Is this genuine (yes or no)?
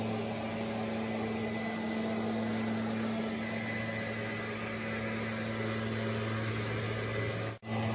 yes